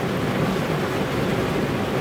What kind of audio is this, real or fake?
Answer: real